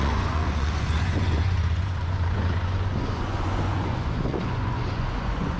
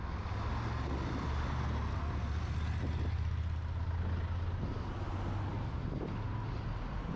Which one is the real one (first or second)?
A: second